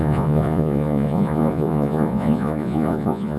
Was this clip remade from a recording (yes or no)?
yes